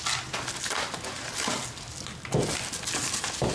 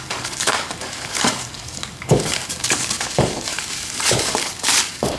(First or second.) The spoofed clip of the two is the second